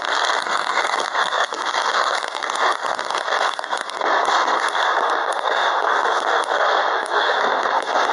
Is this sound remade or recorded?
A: remade